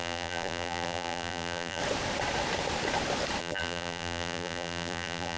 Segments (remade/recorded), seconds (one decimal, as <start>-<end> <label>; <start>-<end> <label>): 0.0-1.8 remade; 1.8-3.4 recorded; 3.4-5.4 remade